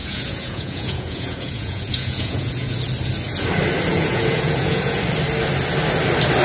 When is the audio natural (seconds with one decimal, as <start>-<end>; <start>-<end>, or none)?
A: 2.8-3.9; 5.0-6.4